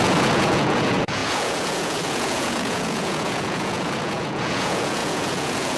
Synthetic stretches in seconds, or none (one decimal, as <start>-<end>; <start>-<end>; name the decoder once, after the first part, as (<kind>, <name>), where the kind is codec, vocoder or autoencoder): 0.0-5.8 (vocoder, Vocos)